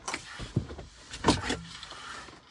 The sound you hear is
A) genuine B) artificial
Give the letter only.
A